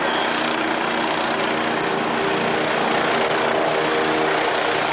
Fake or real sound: real